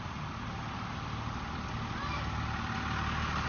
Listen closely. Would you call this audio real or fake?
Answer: real